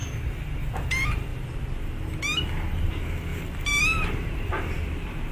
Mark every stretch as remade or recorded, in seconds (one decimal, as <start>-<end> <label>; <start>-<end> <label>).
0.0-0.6 remade; 0.6-1.3 recorded; 1.3-1.8 remade; 1.8-3.3 recorded; 3.3-4.6 remade; 4.6-5.3 recorded